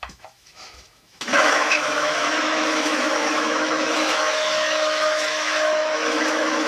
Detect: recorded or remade remade